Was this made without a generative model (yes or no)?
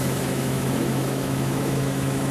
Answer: no